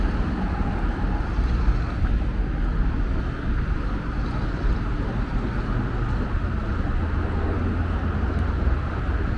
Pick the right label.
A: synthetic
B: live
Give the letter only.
B